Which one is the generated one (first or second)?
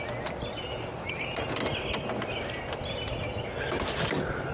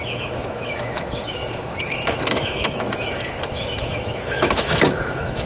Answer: second